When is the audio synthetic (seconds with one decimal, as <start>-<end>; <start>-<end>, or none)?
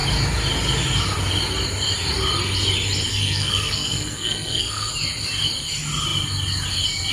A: 3.1-4.9